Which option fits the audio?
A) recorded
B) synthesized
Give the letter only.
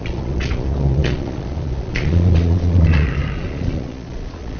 B